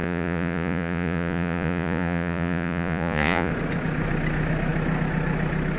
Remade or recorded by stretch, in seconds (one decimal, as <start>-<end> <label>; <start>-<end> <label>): 0.0-3.5 remade; 3.5-5.8 recorded